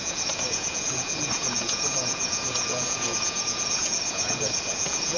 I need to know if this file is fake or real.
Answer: fake